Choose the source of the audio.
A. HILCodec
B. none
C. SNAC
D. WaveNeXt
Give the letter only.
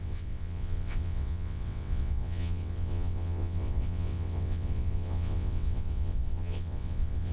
D